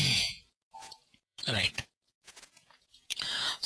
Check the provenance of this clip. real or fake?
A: fake